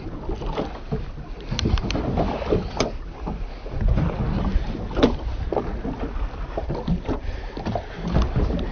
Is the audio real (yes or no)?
yes